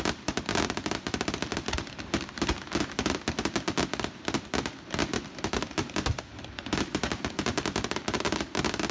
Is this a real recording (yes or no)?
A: yes